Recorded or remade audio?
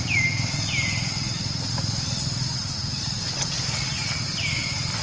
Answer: recorded